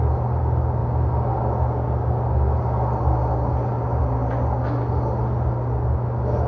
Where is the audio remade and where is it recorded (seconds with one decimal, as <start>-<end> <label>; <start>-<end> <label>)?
0.0-6.5 recorded